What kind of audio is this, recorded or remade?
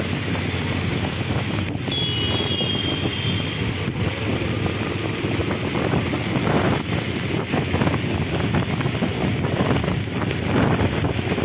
recorded